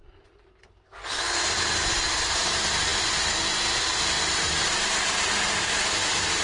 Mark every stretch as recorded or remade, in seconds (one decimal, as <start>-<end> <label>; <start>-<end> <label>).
0.0-6.4 recorded